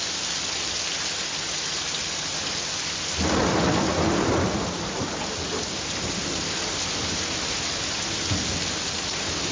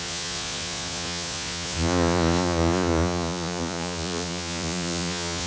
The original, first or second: first